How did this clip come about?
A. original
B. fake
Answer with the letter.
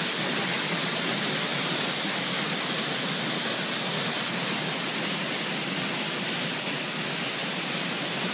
A